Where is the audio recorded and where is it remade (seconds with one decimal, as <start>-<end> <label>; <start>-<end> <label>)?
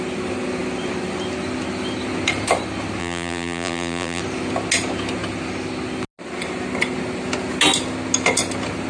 0.0-3.0 recorded; 3.0-4.2 remade; 4.2-8.9 recorded